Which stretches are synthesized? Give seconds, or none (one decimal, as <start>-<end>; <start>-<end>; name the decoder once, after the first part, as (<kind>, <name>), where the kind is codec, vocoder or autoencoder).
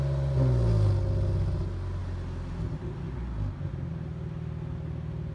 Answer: none